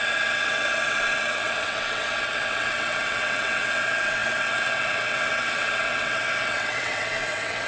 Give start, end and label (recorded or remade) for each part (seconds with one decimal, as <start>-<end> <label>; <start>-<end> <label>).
0.0-7.7 remade